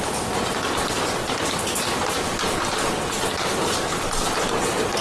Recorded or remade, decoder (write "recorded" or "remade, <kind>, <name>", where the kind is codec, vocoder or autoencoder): recorded